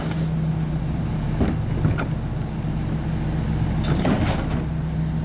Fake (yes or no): no